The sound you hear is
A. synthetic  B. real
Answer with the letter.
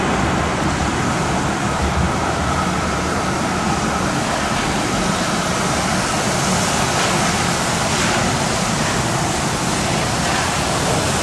B